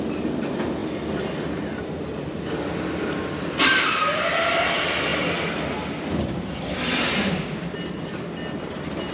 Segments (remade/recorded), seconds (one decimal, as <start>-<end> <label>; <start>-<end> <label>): 0.0-5.1 recorded; 5.1-6.7 remade; 6.7-9.1 recorded